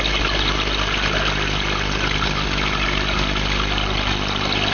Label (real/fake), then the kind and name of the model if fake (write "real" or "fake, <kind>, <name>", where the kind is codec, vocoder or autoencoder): real